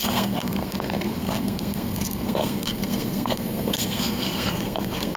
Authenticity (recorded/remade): remade